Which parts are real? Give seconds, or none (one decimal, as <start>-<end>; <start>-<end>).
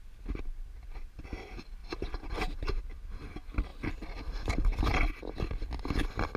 0.0-6.4